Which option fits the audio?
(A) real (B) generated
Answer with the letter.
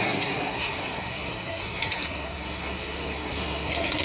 B